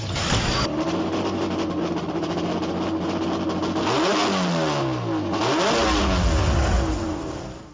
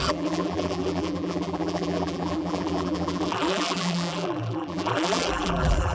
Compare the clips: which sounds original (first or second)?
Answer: first